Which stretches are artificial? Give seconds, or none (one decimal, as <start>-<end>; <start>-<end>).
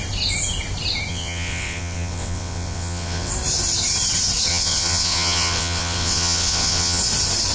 1.1-3.3; 4.5-7.0